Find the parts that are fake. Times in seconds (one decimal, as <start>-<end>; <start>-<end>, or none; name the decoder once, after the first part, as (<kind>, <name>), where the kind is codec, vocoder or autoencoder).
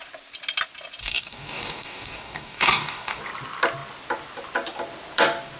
1.0-3.2 (codec, DAC)